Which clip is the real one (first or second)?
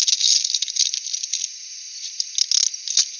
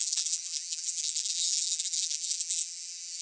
first